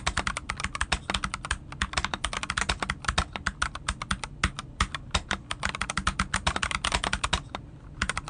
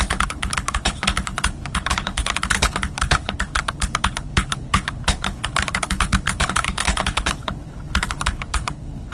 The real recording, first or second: first